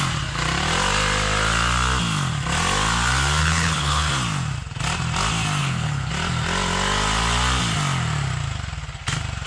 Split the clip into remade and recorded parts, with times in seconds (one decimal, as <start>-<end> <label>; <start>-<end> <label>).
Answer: 0.0-3.4 recorded; 3.4-4.1 remade; 4.1-5.6 recorded; 5.6-6.1 remade; 6.1-9.5 recorded